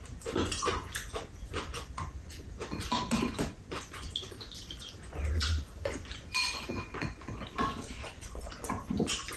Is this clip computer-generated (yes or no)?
yes